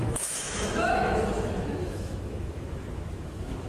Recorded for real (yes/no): no